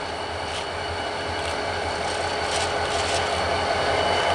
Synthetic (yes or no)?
no